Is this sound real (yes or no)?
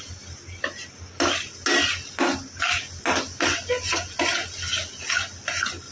yes